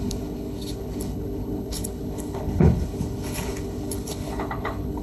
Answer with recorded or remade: remade